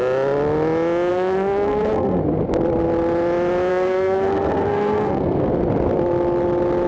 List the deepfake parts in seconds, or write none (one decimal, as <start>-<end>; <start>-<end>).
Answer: 1.1-2.2; 3.7-5.5

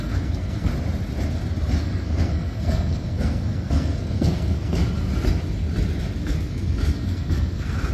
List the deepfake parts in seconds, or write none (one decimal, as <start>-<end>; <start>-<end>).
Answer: 0.0-0.7; 1.8-4.8; 6.2-7.9

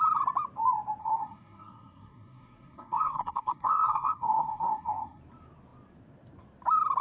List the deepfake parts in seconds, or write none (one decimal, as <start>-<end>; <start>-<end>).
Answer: 1.0-5.2

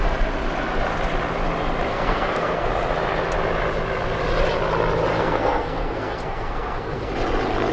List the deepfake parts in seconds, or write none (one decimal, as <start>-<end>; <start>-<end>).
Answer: 1.9-2.7; 5.2-7.1

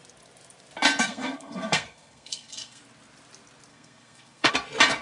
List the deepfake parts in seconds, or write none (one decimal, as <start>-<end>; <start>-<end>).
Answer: 1.0-2.8; 3.7-4.5

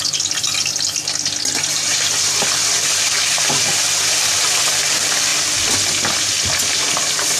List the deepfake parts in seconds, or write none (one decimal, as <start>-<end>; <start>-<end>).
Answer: none

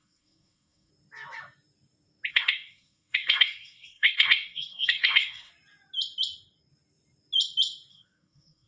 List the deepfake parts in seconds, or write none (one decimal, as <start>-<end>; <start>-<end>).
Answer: 0.0-0.9; 2.3-5.5; 7.9-8.7

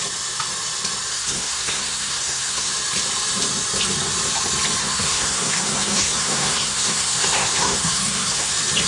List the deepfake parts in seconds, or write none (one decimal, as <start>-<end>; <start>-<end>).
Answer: 1.1-2.7; 4.8-8.5